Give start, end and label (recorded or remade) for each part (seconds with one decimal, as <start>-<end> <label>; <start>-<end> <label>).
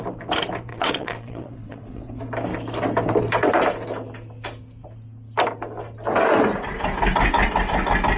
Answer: 0.0-0.7 recorded; 0.7-2.1 remade; 2.1-8.2 recorded